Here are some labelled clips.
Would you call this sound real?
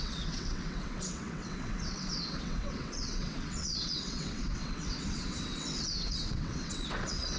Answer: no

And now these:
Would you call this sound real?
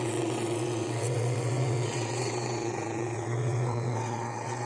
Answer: no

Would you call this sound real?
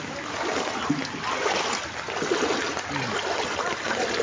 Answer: yes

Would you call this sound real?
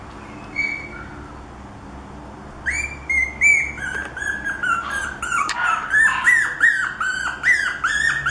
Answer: yes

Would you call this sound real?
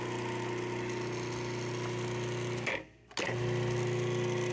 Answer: yes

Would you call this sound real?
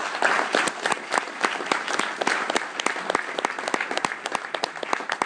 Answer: yes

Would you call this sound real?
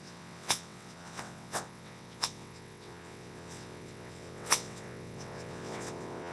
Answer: no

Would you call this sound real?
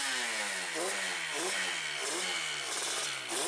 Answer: yes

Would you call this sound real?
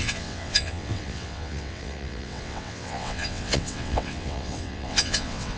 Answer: no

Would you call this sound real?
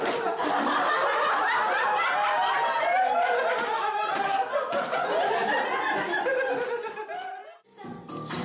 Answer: yes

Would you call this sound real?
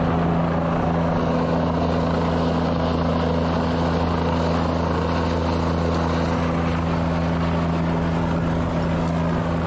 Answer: yes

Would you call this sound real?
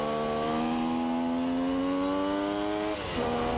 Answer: yes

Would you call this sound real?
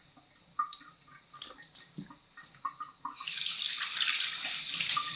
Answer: yes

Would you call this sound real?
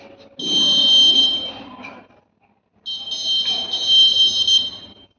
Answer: yes